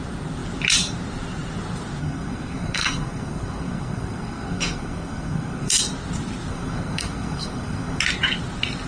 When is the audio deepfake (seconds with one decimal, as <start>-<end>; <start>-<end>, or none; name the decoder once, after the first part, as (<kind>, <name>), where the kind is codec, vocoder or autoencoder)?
2.0-5.8 (codec, SNAC); 6.5-8.0